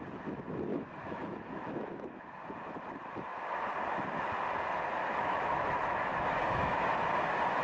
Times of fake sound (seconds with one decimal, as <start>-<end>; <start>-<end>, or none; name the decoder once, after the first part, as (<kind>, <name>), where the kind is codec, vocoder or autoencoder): 0.7-2.2 (autoencoder, DAC-VAE); 5.0-6.9